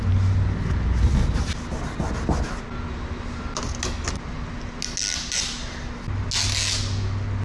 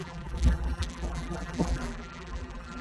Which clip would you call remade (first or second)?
second